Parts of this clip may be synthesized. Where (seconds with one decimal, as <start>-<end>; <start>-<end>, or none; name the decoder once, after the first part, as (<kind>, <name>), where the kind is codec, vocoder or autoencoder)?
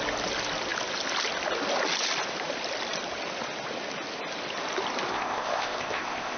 5.1-6.4 (codec, ZipCodec)